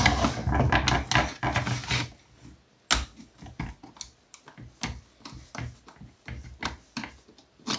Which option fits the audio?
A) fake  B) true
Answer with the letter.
B